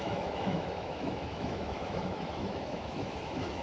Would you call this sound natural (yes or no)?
no